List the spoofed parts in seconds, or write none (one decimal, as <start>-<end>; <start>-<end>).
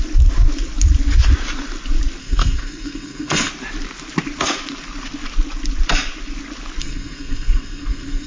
2.2-3.5; 6.8-8.3